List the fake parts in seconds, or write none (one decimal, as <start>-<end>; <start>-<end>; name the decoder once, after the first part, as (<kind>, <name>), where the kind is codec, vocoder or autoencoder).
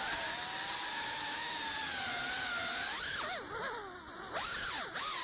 0.9-1.5 (autoencoder, DAC-VAE)